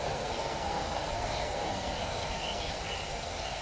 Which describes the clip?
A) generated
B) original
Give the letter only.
A